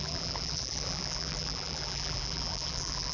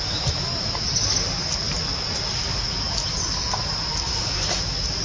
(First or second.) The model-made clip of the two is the first